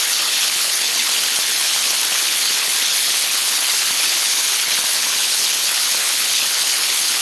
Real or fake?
fake